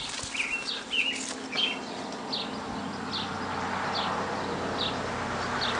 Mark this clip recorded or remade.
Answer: recorded